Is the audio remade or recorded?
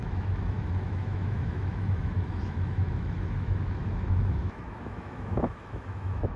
remade